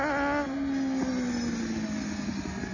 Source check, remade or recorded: recorded